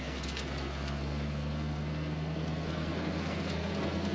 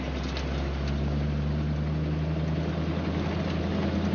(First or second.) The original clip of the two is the second